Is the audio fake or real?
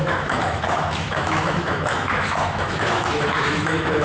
fake